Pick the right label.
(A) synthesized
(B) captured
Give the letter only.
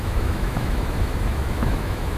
A